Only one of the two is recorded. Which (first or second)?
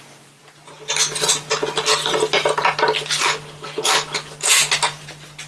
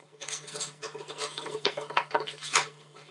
first